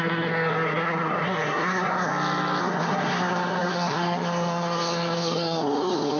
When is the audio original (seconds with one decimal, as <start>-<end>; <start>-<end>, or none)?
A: 2.1-2.6